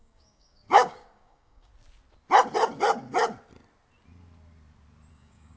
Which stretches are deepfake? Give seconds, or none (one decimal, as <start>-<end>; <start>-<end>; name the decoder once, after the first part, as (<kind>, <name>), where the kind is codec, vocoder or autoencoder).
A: 0.0-1.7 (codec, DAC); 5.1-5.6